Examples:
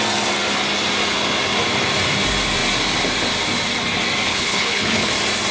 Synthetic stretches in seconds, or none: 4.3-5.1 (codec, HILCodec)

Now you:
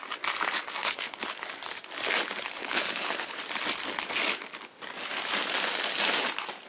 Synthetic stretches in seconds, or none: 0.8-1.6 (codec, HILCodec); 2.6-3.4

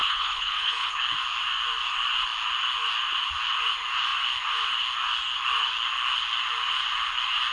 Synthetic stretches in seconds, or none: 0.0-1.0 (codec, HILCodec)

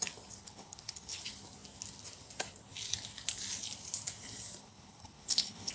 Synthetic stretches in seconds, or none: 0.4-1.2 (codec, HILCodec); 4.6-5.7

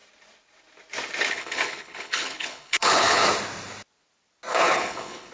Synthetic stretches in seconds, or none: 1.3-3.2 (codec, HILCodec); 4.5-5.3

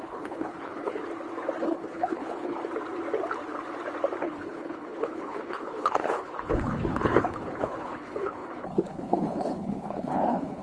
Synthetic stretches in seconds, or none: 0.0-1.0 (codec, HILCodec); 1.6-2.6; 4.2-10.6

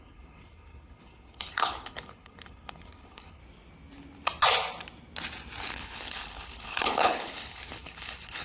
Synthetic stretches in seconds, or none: 0.0-3.4 (codec, HILCodec); 5.6-8.4